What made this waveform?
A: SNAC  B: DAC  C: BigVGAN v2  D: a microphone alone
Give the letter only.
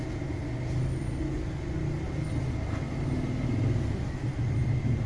D